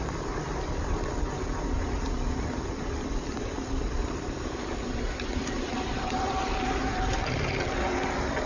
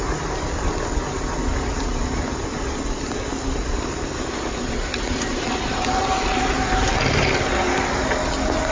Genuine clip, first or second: second